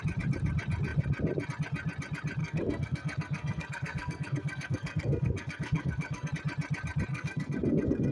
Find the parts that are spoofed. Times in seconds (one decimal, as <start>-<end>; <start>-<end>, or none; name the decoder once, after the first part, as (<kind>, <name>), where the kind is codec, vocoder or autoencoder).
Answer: 2.4-6.3 (codec, SNAC); 7.1-8.1